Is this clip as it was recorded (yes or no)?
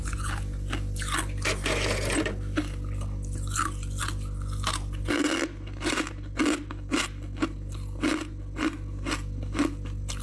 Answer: yes